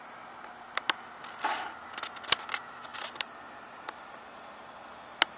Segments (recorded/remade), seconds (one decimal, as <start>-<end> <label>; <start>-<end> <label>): 0.0-5.4 recorded